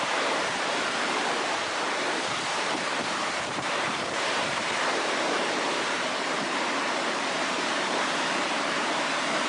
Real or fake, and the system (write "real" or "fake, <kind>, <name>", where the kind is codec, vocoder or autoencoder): fake, vocoder, BigVGAN v2